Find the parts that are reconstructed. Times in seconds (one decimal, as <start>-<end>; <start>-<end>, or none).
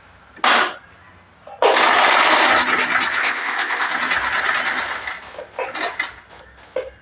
3.2-3.9